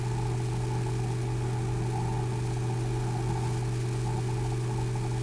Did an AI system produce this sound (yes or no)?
no